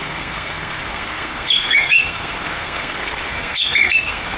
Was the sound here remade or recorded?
remade